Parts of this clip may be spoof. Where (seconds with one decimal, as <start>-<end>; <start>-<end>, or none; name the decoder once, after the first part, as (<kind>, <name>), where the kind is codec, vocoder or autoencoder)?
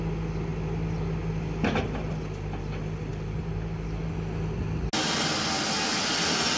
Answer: none